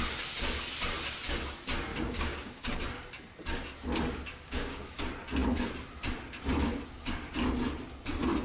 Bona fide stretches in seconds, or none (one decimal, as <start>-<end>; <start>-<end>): 0.0-1.9; 2.8-4.3; 5.0-8.4